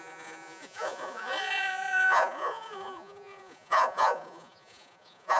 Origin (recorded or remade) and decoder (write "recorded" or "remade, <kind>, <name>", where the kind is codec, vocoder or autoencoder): remade, vocoder, Vocos